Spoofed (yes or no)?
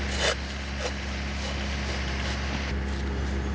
no